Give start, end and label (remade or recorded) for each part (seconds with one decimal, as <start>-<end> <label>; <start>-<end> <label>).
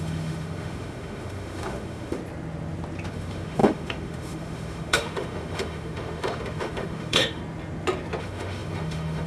0.0-2.2 remade; 2.2-3.1 recorded; 3.1-7.4 remade; 7.4-8.2 recorded; 8.2-9.3 remade